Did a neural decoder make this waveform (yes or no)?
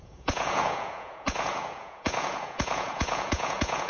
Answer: yes